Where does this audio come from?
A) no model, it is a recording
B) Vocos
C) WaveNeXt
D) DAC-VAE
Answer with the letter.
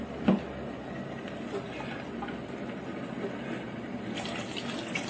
A